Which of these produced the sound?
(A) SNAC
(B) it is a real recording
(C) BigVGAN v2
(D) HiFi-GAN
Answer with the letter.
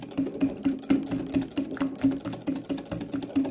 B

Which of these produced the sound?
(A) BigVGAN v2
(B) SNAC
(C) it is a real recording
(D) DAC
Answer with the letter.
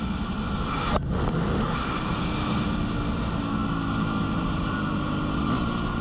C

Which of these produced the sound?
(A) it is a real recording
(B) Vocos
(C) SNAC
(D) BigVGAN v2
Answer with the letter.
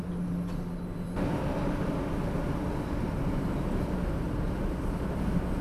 A